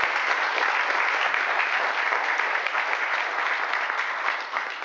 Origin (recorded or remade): recorded